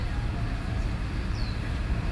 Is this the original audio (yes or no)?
yes